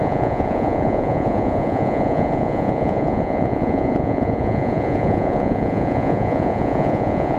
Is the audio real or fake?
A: fake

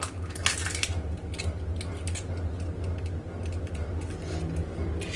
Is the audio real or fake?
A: real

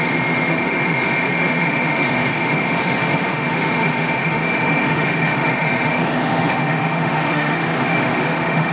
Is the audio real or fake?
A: fake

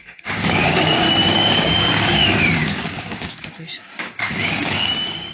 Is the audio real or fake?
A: fake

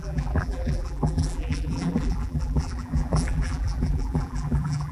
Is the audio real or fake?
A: fake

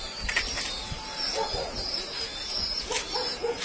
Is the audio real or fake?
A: real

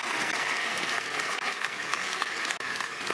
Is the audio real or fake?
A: fake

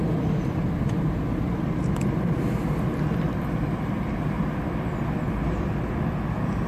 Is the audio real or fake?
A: real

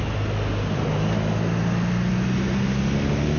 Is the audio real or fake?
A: real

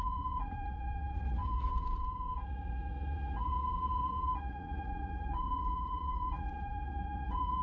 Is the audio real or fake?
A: fake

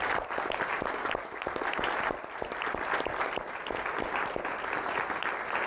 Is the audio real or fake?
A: real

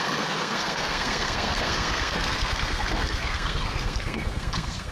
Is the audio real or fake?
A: fake